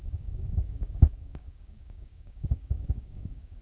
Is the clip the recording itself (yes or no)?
no